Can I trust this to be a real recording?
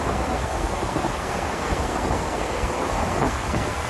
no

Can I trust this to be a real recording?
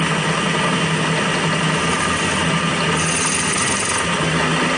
yes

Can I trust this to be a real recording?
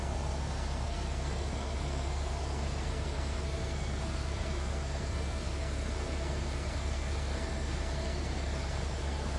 no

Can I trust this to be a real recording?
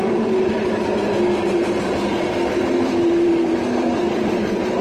no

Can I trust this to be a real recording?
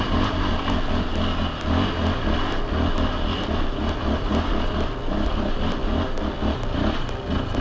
yes